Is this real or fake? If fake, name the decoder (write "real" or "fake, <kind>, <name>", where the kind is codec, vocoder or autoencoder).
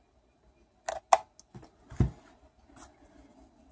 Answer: real